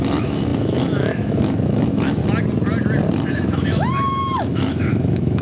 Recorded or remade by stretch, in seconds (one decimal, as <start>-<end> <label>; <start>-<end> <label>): 0.0-2.2 remade; 2.2-3.3 recorded; 3.3-5.4 remade